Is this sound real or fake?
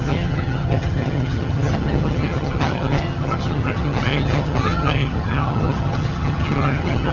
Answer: fake